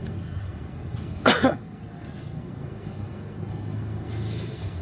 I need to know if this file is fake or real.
fake